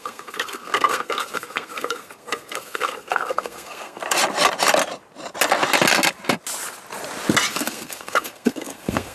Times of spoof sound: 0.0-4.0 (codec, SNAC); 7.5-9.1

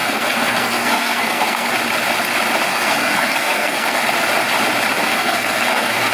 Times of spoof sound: 0.0-1.7 (codec, SNAC); 2.7-4.0; 5.0-6.1

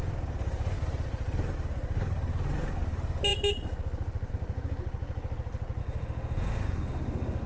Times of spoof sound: 5.8-7.5 (autoencoder, DAC-VAE)

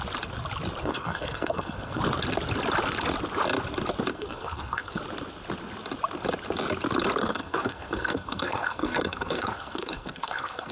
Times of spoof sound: 0.8-2.0 (codec, SNAC); 4.1-5.0; 7.2-10.7

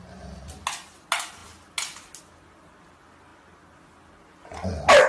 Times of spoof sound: none